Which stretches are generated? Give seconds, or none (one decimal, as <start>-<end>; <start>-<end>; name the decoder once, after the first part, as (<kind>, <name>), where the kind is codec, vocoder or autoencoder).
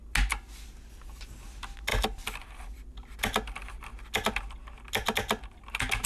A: none